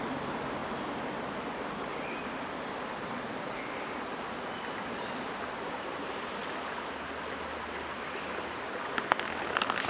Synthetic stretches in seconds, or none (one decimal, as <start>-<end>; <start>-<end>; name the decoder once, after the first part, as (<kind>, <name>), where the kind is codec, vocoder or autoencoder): none